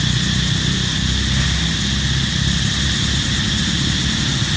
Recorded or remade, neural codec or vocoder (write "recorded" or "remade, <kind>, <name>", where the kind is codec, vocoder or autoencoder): recorded